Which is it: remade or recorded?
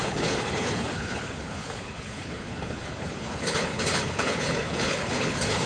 remade